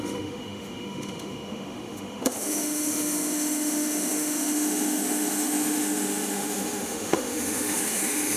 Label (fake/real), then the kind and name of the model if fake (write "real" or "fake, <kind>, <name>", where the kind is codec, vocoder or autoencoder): fake, autoencoder, DAC-VAE